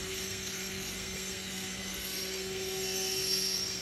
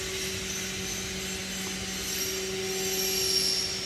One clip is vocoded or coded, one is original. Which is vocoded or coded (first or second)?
first